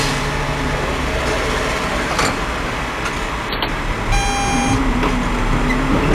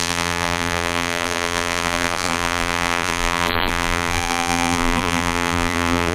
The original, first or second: first